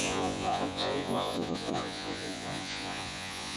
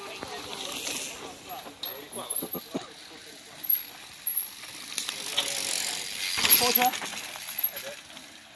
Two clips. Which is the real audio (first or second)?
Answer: second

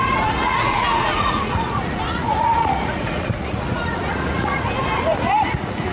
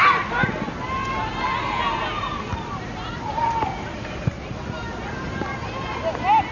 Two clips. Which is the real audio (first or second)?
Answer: second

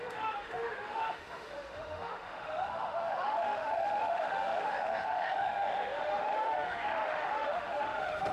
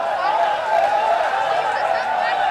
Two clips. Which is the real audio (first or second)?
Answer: second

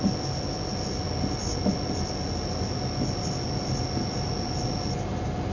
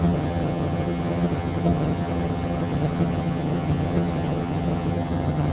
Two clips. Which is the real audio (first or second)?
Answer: first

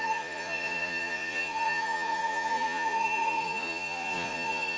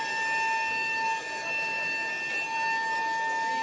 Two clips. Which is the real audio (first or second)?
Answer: second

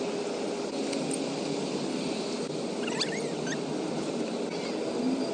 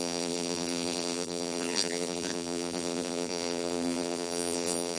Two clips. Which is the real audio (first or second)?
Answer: first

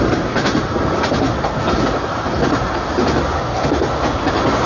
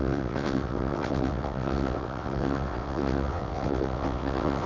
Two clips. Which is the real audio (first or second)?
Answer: first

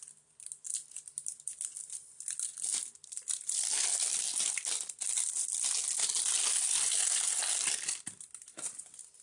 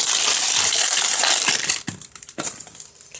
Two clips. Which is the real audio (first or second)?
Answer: first